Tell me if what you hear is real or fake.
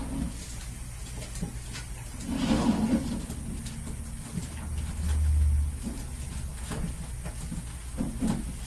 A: real